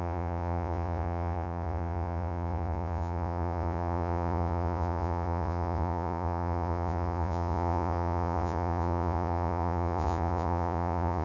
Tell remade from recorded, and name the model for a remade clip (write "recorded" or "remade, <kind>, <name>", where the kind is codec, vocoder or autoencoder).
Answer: remade, vocoder, Vocos